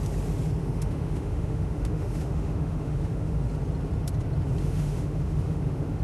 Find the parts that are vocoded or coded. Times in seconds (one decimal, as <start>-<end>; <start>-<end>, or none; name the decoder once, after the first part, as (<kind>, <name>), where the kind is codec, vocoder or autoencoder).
0.6-3.4 (autoencoder, DAC-VAE); 4.6-6.0